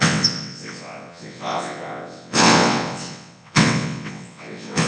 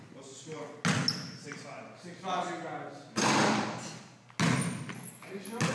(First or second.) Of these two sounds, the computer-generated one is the first